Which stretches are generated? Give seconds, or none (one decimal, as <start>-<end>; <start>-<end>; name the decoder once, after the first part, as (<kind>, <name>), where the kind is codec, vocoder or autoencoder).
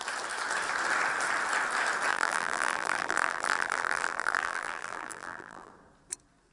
2.1-5.7 (vocoder, BigVGAN v2)